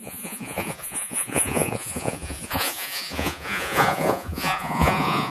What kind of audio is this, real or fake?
fake